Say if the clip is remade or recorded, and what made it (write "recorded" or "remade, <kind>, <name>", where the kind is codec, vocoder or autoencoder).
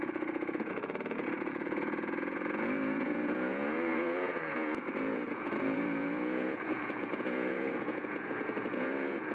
remade, vocoder, Vocos